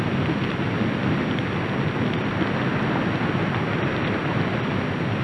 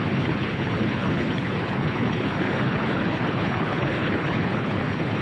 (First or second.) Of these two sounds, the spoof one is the second